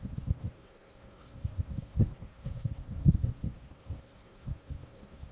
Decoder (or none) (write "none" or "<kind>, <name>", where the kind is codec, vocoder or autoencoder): codec, SNAC